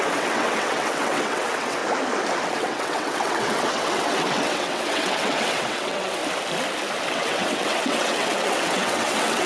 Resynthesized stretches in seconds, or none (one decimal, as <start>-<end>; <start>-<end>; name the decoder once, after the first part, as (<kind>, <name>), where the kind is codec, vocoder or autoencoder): 0.0-1.8 (vocoder, WaveNeXt); 2.5-6.2; 7.1-9.5